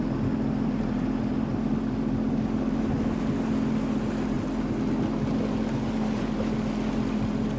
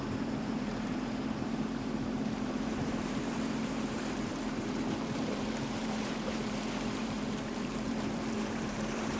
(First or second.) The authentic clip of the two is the first